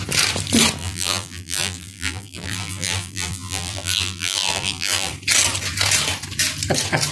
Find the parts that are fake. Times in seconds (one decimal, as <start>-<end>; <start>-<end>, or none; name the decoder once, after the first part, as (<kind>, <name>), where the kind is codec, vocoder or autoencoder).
0.8-5.1 (vocoder, BigVGAN v2)